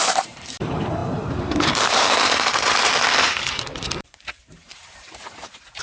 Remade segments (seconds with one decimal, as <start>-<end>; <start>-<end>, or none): 0.0-5.8